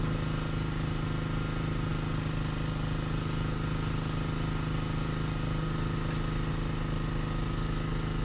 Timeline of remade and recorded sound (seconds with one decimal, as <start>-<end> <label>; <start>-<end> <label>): 0.0-8.2 recorded